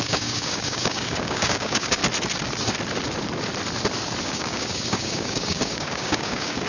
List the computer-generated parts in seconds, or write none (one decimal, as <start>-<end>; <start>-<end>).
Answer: 0.0-2.0; 4.2-6.7